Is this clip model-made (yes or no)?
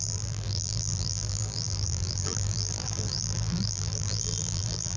yes